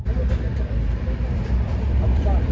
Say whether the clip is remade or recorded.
remade